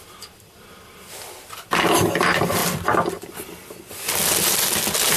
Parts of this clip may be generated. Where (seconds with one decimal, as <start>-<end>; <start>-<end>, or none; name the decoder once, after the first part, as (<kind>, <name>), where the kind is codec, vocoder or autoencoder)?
none